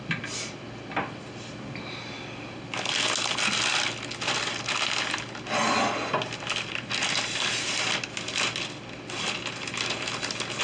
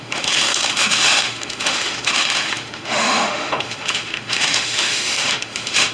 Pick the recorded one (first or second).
first